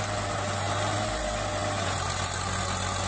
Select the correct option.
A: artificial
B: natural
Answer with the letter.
B